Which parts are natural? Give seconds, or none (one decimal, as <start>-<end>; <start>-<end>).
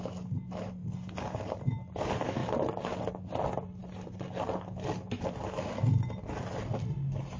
0.0-7.4